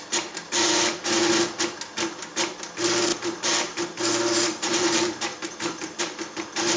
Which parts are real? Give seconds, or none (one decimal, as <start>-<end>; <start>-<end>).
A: 0.0-3.1; 6.0-6.8